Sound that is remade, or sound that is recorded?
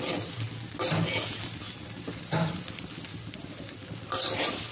recorded